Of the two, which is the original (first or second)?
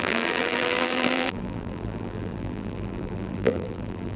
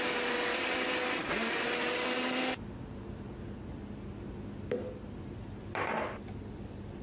second